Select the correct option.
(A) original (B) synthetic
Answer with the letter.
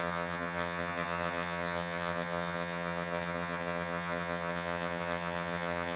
B